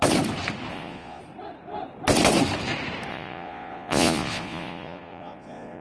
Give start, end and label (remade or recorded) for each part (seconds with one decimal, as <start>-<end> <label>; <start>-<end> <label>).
0.0-0.7 recorded; 0.7-1.2 remade; 1.2-3.1 recorded; 3.1-5.8 remade